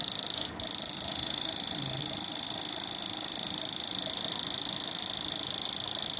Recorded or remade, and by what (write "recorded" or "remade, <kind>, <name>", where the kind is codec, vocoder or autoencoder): recorded